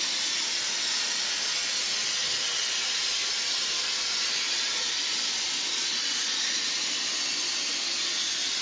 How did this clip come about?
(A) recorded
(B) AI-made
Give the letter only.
A